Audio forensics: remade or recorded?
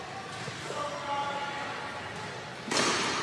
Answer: recorded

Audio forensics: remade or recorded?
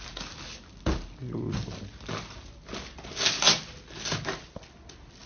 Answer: recorded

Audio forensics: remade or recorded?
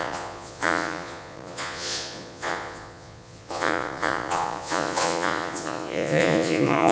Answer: remade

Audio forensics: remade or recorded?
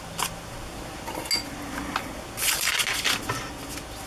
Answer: recorded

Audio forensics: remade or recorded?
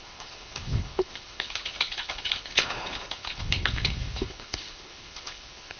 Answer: remade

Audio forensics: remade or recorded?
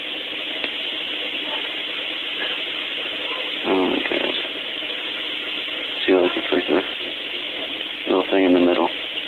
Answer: recorded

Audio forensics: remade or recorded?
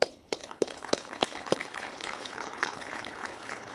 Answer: remade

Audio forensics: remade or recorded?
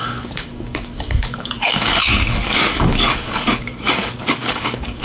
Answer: remade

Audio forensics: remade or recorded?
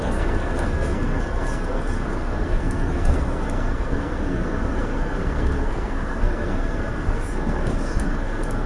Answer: remade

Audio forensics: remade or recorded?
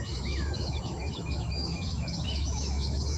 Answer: remade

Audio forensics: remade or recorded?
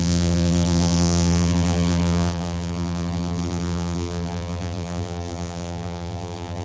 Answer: remade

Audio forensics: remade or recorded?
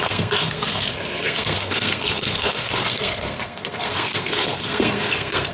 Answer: remade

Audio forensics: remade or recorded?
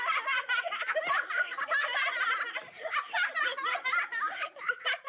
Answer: remade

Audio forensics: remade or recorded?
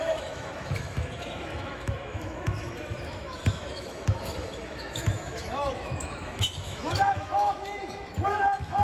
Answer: remade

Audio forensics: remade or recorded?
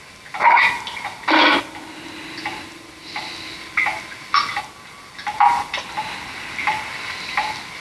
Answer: recorded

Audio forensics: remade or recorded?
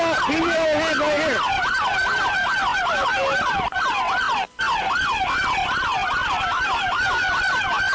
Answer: recorded